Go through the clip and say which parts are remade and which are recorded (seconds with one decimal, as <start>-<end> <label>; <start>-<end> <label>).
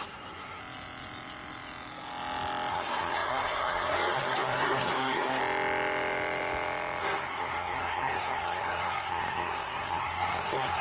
0.0-0.6 remade; 0.6-2.7 recorded; 2.7-5.4 remade; 5.4-7.0 recorded; 7.0-10.8 remade